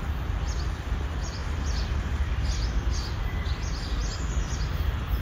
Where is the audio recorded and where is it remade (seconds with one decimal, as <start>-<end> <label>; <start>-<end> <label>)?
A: 0.0-1.4 recorded; 1.4-2.2 remade; 2.2-5.2 recorded